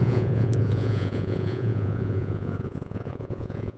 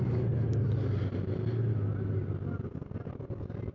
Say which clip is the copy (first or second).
first